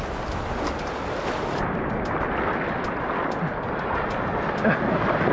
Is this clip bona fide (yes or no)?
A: yes